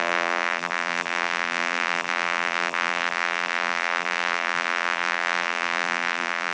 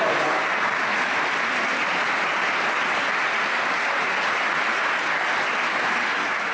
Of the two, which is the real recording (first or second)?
second